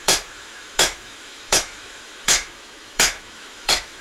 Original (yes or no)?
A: no